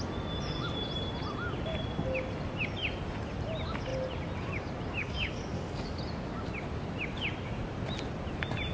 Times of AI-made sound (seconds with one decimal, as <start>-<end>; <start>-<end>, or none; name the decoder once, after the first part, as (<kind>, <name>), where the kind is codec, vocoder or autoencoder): 5.0-6.0 (codec, DAC)